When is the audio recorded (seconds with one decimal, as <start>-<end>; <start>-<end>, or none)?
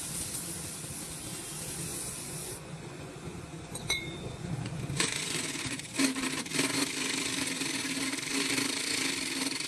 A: 0.0-1.9; 6.0-9.7